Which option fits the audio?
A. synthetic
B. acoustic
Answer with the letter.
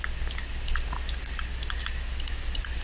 B